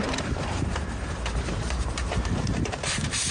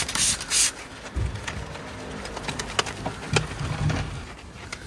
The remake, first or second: first